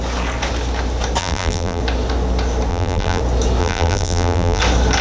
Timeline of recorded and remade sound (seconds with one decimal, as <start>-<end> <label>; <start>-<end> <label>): 0.0-1.2 recorded; 1.2-1.8 remade; 1.8-2.7 recorded; 2.7-3.2 remade; 3.2-3.6 recorded; 3.6-4.6 remade; 4.6-5.0 recorded